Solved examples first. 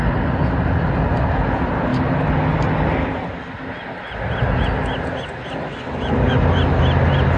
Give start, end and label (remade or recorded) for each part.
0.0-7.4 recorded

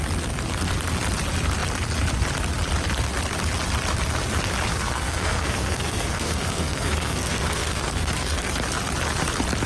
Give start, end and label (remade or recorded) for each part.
0.0-4.7 recorded; 4.7-8.5 remade; 8.5-9.7 recorded

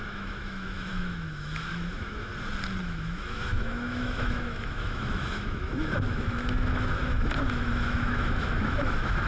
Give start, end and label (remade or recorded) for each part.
0.0-2.3 remade; 2.3-2.8 recorded; 2.8-9.3 remade

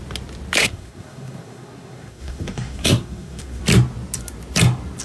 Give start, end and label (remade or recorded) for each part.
0.0-0.6 recorded; 0.6-3.6 remade; 3.6-5.0 recorded

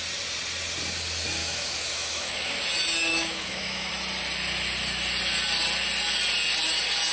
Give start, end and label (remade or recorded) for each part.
0.0-1.4 recorded; 1.4-2.6 remade; 2.6-3.1 recorded; 3.1-3.9 remade; 3.9-7.1 recorded

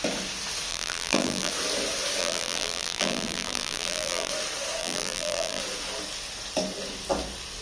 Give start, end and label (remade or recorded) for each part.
0.0-0.7 recorded; 0.7-1.5 remade; 1.5-2.2 recorded; 2.2-4.3 remade; 4.3-4.8 recorded; 4.8-5.6 remade; 5.6-7.6 recorded

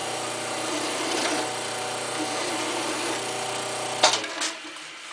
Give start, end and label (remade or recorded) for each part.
0.0-2.5 remade; 2.5-5.1 recorded

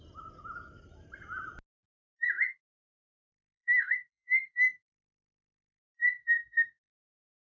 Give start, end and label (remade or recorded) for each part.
0.0-3.3 recorded; 3.3-5.8 remade; 5.8-6.2 recorded; 6.2-6.9 remade; 6.9-7.5 recorded